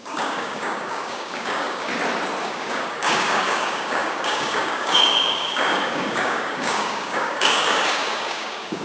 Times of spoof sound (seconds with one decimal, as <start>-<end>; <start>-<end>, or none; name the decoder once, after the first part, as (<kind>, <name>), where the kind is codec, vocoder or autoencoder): 0.0-1.9 (codec, DAC); 2.4-8.8